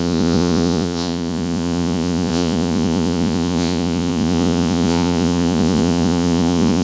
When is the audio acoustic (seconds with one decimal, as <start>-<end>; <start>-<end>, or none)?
none